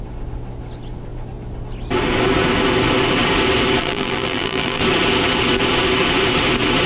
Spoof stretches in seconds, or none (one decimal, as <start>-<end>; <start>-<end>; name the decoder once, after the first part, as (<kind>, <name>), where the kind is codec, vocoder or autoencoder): 3.8-4.8 (vocoder, BigVGAN v2)